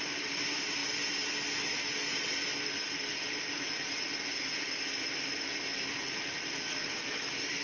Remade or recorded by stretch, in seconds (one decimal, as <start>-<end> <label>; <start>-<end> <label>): 0.0-7.6 recorded